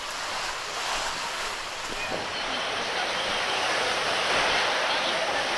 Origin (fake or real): real